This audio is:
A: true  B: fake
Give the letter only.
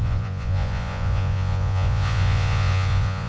B